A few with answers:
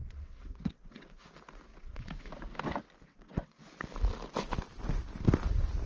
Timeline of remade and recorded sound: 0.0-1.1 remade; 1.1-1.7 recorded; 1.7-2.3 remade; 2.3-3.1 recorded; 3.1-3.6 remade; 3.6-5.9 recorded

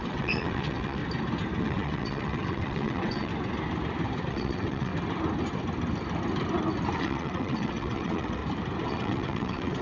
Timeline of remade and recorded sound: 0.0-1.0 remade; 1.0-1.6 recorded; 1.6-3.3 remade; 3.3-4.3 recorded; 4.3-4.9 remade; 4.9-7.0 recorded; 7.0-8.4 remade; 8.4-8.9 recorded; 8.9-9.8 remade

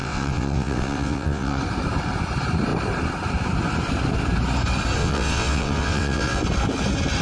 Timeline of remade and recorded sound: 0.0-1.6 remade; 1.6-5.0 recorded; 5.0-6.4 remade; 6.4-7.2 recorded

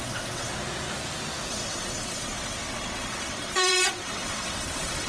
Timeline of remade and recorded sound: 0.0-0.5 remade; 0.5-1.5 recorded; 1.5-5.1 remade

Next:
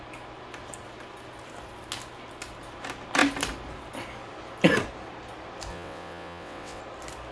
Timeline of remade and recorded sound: 0.0-5.7 recorded; 5.7-6.8 remade; 6.8-7.3 recorded

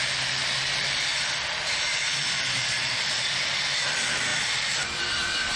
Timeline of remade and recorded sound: 0.0-5.6 recorded